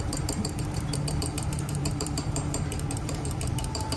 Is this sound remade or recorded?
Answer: remade